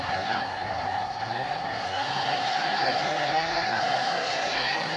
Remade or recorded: remade